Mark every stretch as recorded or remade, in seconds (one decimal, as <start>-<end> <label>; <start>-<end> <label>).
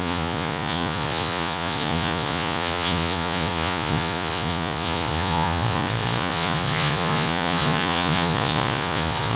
0.0-9.4 remade